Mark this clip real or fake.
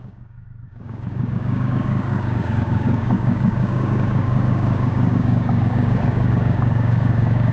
fake